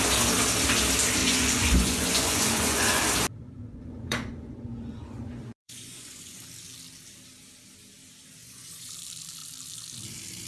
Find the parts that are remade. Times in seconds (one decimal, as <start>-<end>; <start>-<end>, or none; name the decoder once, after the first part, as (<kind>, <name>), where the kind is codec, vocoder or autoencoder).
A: 1.2-3.0 (vocoder, Vocos); 3.4-6.4; 8.4-8.9